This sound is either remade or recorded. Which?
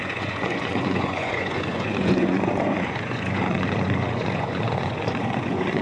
remade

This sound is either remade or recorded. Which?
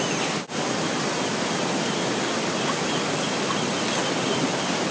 recorded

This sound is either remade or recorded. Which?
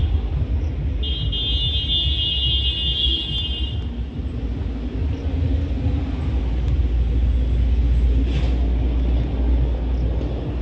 recorded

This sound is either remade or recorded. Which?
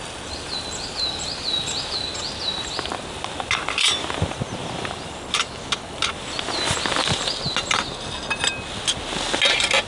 recorded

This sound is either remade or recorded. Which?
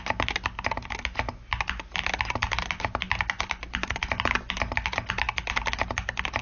recorded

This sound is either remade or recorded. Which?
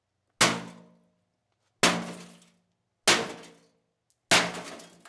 recorded